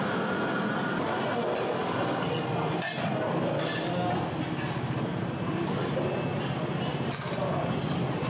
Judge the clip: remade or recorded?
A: recorded